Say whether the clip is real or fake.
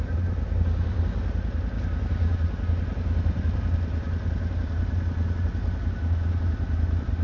real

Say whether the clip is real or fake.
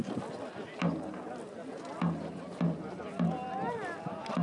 real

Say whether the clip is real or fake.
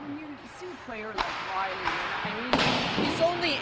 real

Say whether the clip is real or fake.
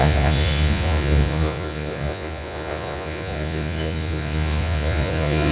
fake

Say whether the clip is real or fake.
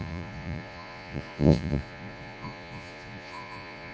fake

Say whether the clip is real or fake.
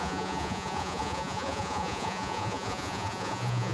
fake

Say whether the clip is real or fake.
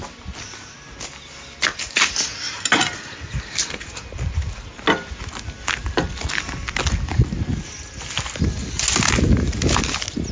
real